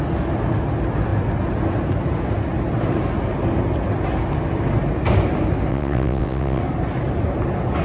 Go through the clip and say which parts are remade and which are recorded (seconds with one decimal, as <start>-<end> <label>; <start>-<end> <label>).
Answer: 0.0-5.7 recorded; 5.7-6.6 remade; 6.6-7.8 recorded

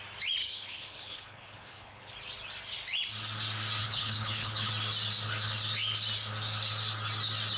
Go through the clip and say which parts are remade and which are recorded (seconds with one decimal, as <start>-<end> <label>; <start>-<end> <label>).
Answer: 0.0-0.4 recorded; 0.4-2.1 remade; 2.1-3.8 recorded; 3.8-4.7 remade; 4.7-7.6 recorded

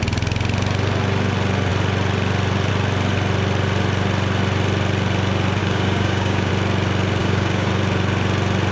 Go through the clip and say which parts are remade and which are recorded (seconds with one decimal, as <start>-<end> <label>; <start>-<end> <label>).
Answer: 0.0-5.6 recorded; 5.6-6.5 remade; 6.5-7.2 recorded; 7.2-7.7 remade; 7.7-8.7 recorded

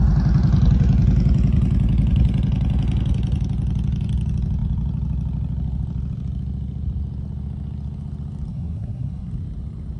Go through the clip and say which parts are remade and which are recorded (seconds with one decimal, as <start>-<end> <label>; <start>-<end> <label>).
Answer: 0.0-8.5 recorded; 8.5-9.3 remade; 9.3-10.0 recorded